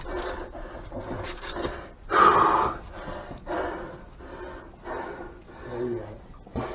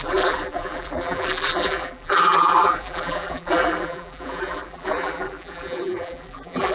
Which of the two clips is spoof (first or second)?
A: second